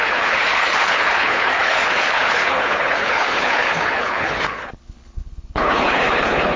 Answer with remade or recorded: remade